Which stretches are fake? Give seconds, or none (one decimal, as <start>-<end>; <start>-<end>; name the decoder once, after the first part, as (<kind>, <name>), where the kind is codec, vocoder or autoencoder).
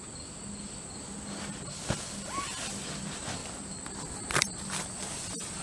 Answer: none